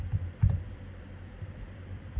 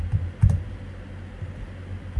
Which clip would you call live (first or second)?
second